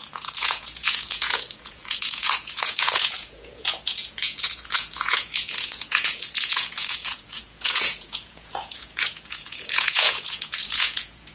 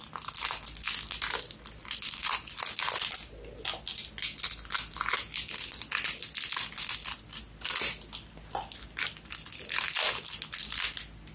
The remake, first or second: first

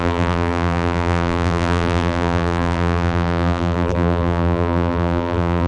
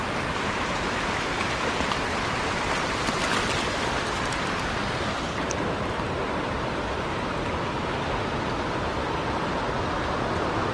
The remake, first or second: first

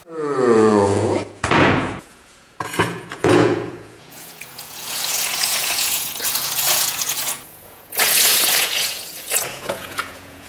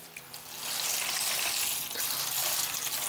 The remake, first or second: first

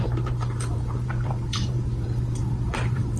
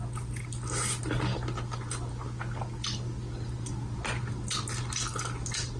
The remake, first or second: first